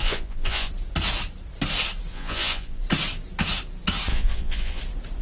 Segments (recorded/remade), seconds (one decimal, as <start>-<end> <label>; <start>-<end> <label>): 0.0-0.7 remade; 0.7-2.1 recorded; 2.1-2.8 remade; 2.8-4.1 recorded; 4.1-4.8 remade; 4.8-5.2 recorded